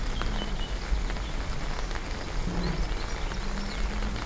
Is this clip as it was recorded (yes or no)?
yes